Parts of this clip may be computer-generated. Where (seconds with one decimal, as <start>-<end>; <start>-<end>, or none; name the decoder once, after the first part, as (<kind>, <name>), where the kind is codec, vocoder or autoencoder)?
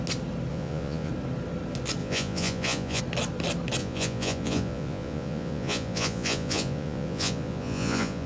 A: 0.5-1.1 (vocoder, Vocos); 2.0-3.0; 3.8-8.3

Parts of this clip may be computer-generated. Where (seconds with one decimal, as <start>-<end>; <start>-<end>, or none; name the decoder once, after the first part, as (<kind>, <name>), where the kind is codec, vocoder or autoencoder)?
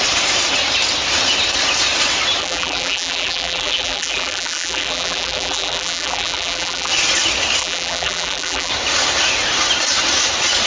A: 2.4-6.9 (vocoder, BigVGAN v2); 7.6-8.7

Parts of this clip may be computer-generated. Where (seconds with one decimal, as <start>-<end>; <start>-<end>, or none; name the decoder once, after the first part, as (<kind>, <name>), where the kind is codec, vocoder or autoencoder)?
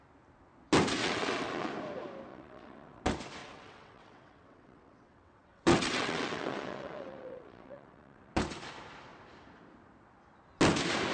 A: 1.0-1.7 (vocoder, WaveNeXt); 2.3-3.0; 3.4-8.3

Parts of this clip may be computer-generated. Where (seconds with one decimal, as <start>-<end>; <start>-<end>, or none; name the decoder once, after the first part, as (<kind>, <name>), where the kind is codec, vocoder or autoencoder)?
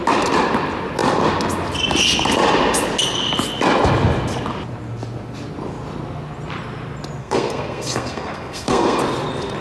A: 7.2-9.0 (codec, SNAC)